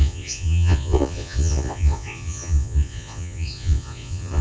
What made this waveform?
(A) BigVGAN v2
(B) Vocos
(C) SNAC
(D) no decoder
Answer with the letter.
B